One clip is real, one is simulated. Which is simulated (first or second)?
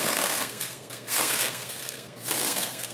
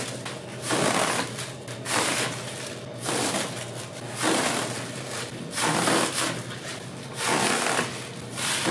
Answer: first